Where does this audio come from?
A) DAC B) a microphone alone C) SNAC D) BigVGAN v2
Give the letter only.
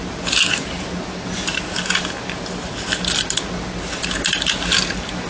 B